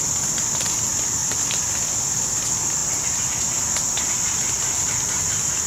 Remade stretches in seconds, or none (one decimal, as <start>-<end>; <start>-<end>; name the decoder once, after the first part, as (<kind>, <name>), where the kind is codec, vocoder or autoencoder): 1.2-1.8 (vocoder, BigVGAN v2)